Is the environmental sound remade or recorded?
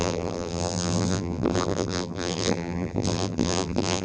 remade